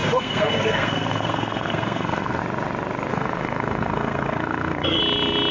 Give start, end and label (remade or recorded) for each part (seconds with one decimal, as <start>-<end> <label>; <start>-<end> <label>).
0.0-2.4 remade; 2.4-3.1 recorded; 3.1-5.0 remade; 5.0-5.5 recorded